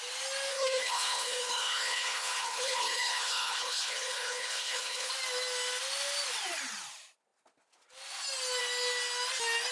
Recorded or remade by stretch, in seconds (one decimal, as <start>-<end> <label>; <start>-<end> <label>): 0.0-0.5 recorded; 0.5-5.1 remade; 5.1-9.7 recorded